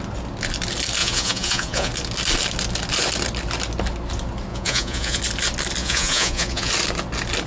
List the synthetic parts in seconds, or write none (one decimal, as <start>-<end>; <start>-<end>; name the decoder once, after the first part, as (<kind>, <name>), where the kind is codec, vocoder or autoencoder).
1.0-1.9 (vocoder, Vocos); 4.5-5.2; 5.8-6.7

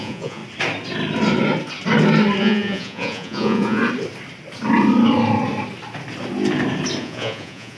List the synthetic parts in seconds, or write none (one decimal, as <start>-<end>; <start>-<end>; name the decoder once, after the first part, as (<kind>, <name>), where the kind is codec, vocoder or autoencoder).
0.0-0.4 (vocoder, Vocos); 2.4-3.8; 7.0-7.8

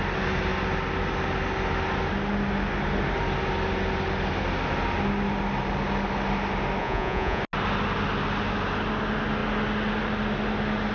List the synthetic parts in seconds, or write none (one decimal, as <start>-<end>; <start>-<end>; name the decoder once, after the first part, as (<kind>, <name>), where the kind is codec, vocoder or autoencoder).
6.8-7.4 (vocoder, Vocos)

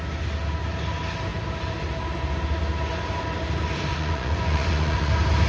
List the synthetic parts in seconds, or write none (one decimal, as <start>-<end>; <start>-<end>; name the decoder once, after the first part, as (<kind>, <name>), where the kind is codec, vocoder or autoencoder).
3.9-5.1 (vocoder, Vocos)